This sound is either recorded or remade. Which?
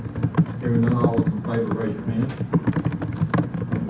recorded